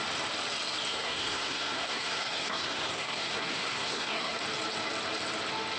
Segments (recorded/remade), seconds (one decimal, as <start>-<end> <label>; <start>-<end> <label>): 0.0-0.9 recorded; 0.9-4.4 remade; 4.4-5.8 recorded